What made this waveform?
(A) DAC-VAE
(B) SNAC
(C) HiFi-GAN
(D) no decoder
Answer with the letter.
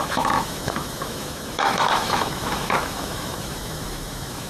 A